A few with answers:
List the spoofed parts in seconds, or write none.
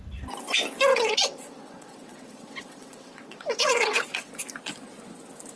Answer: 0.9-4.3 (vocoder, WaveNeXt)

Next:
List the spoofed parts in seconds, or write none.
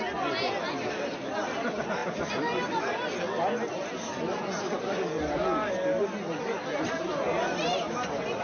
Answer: none